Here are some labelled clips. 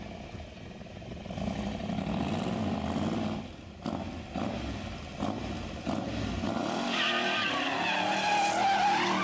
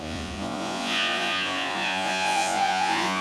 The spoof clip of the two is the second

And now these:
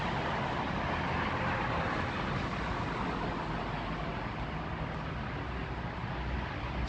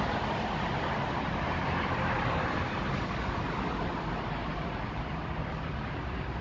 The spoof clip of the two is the second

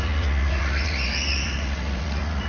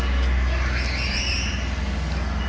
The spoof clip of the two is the first